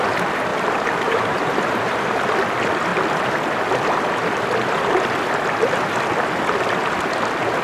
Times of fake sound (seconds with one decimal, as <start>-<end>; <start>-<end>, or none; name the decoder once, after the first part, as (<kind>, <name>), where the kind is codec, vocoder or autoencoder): 0.5-2.2 (vocoder, BigVGAN v2)

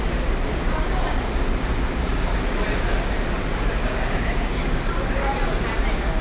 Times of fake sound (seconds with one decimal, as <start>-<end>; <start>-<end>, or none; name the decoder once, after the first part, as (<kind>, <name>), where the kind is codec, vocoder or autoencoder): 3.8-4.7 (codec, DAC)

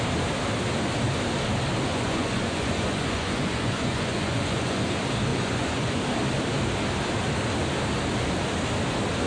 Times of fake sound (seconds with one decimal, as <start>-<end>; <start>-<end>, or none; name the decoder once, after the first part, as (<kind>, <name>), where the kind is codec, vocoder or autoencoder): 1.9-4.8 (vocoder, Vocos); 5.3-6.0

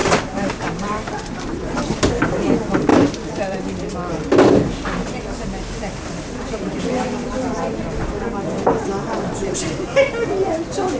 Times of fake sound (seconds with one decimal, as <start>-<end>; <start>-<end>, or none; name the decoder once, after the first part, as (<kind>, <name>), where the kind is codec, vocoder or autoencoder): 0.0-2.1 (vocoder, BigVGAN v2); 2.9-8.1

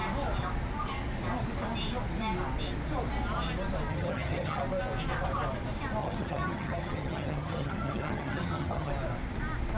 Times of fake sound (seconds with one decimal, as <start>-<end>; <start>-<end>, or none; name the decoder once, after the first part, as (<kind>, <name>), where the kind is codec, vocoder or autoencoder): 3.9-4.6 (vocoder, HiFi-GAN); 6.0-8.9